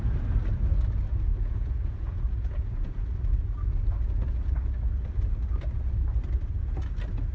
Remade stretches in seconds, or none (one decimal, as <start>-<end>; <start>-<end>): 1.3-3.1